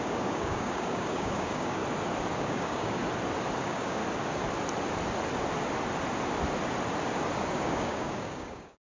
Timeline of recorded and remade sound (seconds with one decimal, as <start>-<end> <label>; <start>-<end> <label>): 0.0-1.8 remade; 1.8-2.4 recorded; 2.4-3.0 remade; 3.0-3.6 recorded; 3.6-4.0 remade; 4.0-7.5 recorded; 7.5-8.9 remade